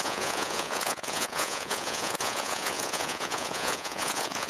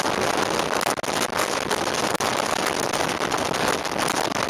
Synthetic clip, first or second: first